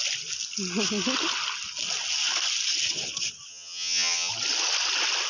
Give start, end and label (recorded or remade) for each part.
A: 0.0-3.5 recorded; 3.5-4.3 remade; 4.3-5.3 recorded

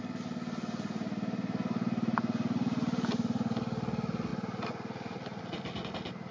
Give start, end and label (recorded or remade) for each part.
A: 0.0-6.3 recorded

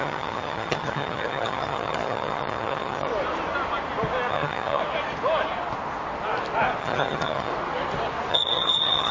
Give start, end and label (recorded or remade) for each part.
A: 0.0-3.1 remade; 3.1-4.3 recorded; 4.3-4.8 remade; 4.8-6.8 recorded; 6.8-7.5 remade; 7.5-8.3 recorded; 8.3-9.1 remade